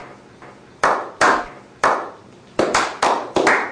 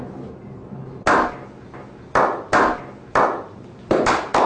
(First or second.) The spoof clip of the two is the first